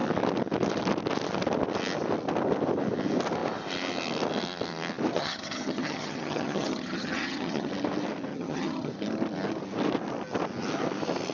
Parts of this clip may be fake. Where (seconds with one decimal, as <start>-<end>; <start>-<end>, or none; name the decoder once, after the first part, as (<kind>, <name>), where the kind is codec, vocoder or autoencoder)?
5.1-7.7 (vocoder, HiFi-GAN); 8.3-8.9